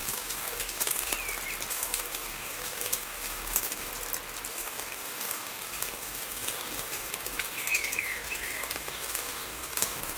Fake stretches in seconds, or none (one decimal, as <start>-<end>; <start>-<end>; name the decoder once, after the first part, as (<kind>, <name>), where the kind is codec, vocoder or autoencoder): 0.0-1.1 (codec, DAC); 1.7-3.9; 4.5-10.2